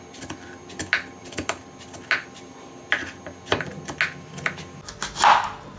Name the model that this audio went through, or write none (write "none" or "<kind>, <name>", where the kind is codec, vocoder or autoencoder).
none